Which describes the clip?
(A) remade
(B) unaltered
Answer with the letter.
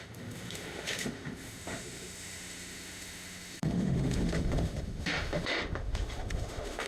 A